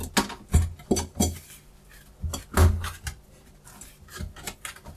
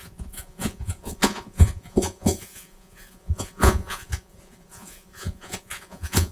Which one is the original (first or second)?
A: first